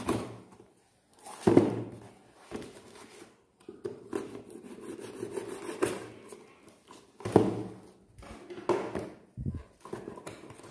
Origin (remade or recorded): recorded